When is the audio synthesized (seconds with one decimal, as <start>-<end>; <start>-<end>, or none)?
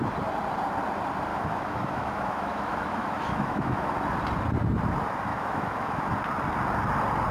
1.3-3.9; 5.3-6.0